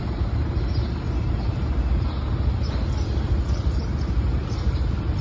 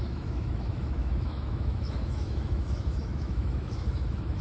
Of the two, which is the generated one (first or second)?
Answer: second